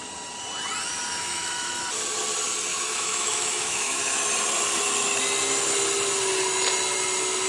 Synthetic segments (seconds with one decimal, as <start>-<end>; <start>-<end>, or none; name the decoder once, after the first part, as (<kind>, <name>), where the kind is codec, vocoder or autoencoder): 1.2-1.8 (autoencoder, DAC-VAE); 2.7-4.2